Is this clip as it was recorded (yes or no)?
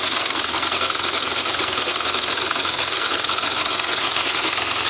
no